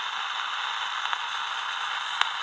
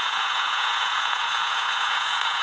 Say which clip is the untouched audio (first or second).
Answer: first